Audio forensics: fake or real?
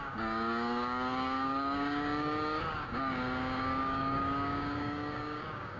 fake